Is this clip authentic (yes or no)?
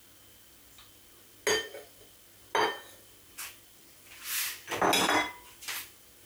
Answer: yes